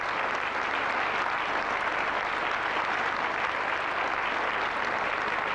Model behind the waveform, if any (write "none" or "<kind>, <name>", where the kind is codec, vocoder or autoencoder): none